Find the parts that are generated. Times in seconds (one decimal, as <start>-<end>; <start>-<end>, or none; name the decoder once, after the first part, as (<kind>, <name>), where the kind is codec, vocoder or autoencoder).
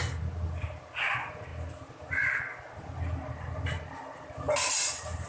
none